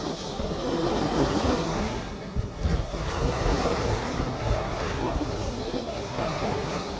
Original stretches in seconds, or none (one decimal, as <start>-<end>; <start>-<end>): none